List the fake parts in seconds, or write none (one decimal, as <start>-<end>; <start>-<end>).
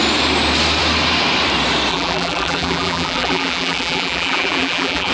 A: 1.9-5.1